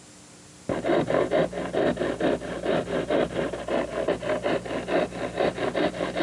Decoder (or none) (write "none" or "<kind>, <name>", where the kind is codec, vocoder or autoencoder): none